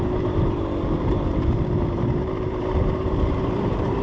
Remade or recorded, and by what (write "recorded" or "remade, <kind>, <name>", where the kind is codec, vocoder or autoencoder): remade, vocoder, BigVGAN v2